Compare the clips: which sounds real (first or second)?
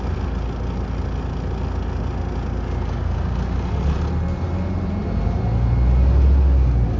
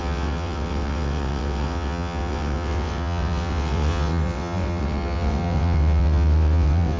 first